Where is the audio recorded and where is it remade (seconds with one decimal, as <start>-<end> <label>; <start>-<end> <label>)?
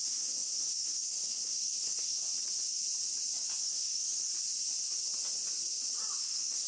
0.0-2.3 remade; 2.3-3.6 recorded; 3.6-4.3 remade; 4.3-6.2 recorded; 6.2-6.7 remade